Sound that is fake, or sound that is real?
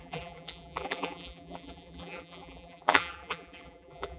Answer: fake